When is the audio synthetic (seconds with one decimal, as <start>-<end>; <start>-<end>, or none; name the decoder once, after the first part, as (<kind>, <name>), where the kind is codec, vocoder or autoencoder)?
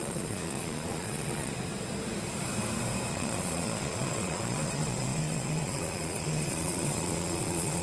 0.0-1.5 (vocoder, Vocos); 3.1-7.8